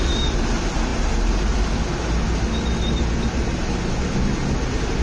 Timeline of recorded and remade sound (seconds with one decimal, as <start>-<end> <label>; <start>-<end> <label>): 0.0-5.0 recorded